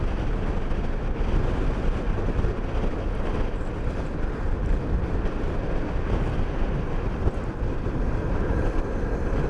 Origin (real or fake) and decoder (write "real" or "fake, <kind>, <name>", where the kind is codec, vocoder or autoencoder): real